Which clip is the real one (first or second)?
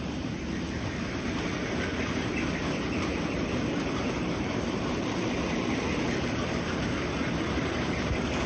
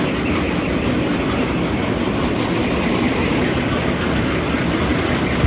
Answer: second